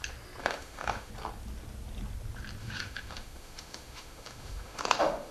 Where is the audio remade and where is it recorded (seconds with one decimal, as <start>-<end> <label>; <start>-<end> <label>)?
0.0-0.4 recorded; 0.4-1.1 remade; 1.1-2.6 recorded; 2.6-5.3 remade